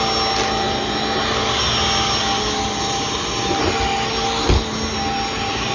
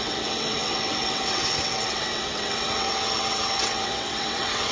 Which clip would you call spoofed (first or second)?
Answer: second